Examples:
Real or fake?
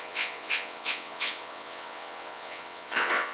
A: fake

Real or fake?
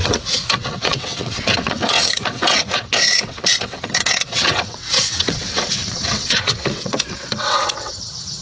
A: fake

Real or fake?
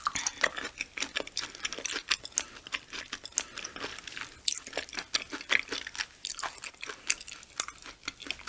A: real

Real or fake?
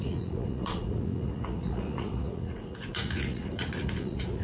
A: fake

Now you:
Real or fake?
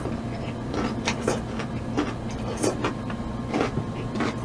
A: real